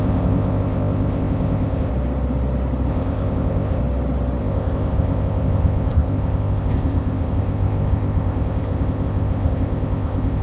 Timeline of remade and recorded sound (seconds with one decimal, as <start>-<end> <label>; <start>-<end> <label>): 0.0-1.9 remade; 1.9-2.9 recorded; 2.9-3.8 remade; 3.8-4.4 recorded; 4.4-10.4 remade